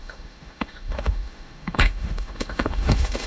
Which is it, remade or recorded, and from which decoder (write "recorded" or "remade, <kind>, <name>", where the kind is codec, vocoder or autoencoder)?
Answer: remade, autoencoder, DAC-VAE